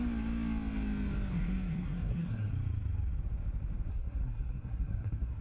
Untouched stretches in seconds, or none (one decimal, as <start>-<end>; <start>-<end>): 0.0-1.3; 2.5-3.9

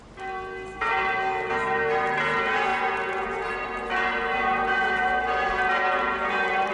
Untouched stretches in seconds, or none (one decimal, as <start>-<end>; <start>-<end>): 0.0-6.7

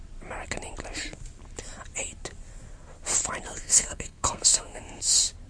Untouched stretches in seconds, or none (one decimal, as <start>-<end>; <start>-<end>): 0.0-3.6; 5.0-5.5

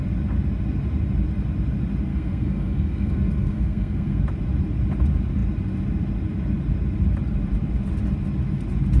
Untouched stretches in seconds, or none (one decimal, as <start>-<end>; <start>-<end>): 0.0-2.1; 4.2-9.0

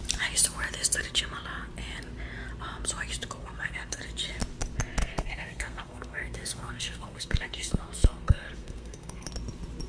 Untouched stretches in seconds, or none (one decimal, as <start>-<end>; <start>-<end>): 0.0-3.4; 4.0-5.0; 9.3-9.9

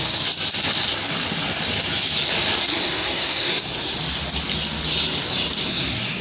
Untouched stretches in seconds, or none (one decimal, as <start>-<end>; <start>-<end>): 0.0-2.7; 4.0-5.6